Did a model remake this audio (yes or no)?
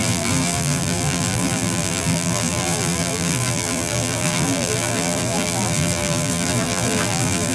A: yes